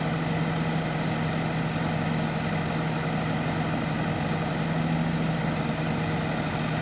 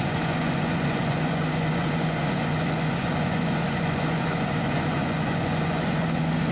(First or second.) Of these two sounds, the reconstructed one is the second